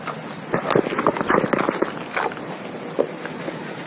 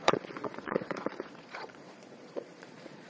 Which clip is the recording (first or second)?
first